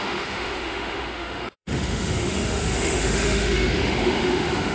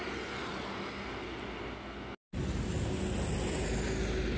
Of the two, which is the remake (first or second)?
first